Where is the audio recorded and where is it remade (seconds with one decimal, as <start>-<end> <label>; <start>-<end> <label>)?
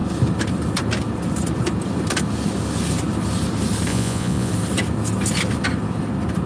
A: 0.0-3.9 recorded; 3.9-4.5 remade; 4.5-6.5 recorded